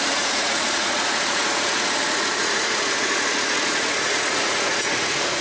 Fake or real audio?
fake